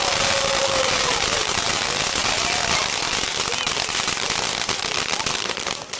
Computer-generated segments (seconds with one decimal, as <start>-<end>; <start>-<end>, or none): 0.5-1.7; 2.2-6.0